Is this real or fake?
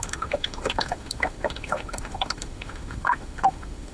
fake